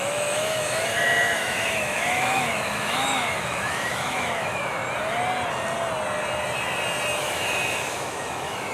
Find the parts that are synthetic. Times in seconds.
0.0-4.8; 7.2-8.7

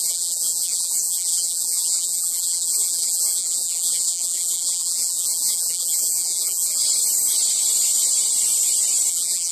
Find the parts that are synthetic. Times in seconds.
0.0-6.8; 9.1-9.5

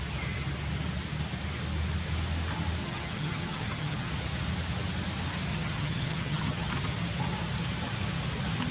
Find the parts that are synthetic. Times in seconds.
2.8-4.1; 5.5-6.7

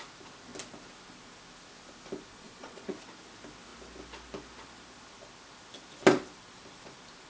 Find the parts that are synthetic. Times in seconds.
2.3-2.9

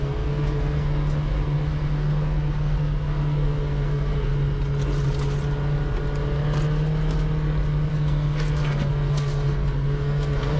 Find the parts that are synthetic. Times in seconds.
0.0-4.3; 7.9-10.6

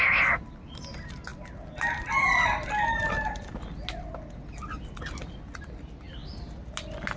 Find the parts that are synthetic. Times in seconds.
none

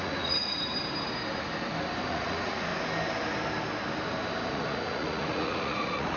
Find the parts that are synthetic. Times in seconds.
0.0-0.6; 2.1-2.7; 4.5-6.2